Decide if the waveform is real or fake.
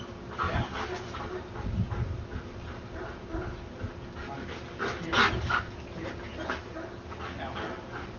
real